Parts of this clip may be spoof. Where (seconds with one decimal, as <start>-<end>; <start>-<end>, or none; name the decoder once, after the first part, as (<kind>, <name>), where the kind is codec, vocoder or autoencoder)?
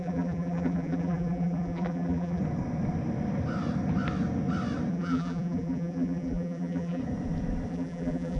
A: 0.0-2.4 (vocoder, BigVGAN v2); 4.9-7.0; 7.7-8.4